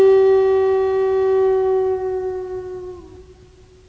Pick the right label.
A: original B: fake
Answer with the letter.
A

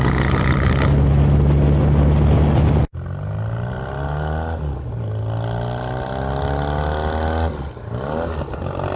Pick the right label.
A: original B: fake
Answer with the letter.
A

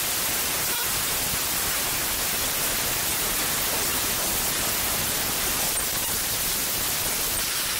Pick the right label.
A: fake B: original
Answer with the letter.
B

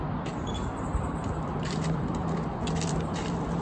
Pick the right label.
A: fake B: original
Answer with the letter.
A